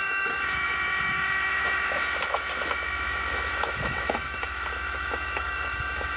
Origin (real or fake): fake